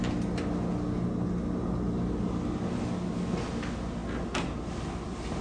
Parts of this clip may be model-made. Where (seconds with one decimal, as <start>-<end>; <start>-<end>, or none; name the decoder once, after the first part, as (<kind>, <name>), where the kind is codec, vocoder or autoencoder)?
none